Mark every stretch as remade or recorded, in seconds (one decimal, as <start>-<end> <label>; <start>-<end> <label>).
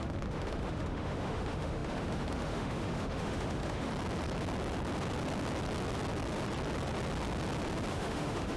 0.0-3.9 remade; 3.9-7.9 recorded; 7.9-8.6 remade